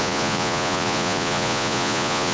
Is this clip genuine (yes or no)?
no